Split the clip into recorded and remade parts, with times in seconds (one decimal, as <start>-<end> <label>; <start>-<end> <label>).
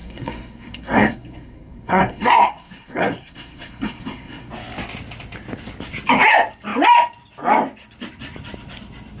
0.0-4.5 remade; 4.5-9.2 recorded